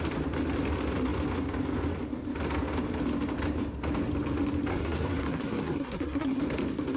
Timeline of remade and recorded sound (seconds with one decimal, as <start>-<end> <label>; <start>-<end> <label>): 0.0-4.7 recorded; 4.7-6.4 remade; 6.4-7.0 recorded